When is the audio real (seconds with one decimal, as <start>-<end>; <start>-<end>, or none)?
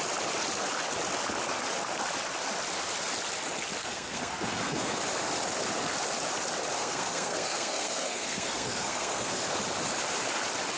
0.0-3.8; 5.0-6.8; 9.4-10.8